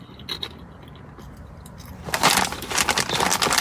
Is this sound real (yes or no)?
yes